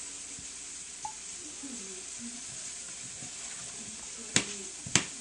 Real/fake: real